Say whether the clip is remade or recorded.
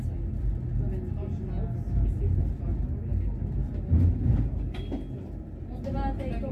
recorded